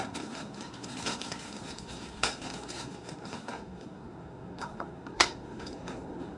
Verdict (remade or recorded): remade